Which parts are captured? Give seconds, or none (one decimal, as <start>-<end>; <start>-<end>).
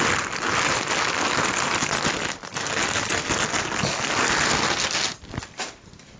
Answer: 0.0-6.2